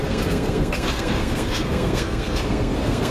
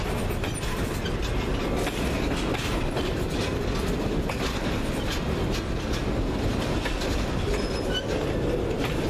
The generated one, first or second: first